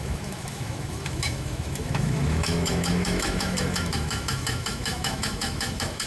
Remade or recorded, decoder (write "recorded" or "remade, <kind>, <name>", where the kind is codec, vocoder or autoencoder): remade, autoencoder, DAC-VAE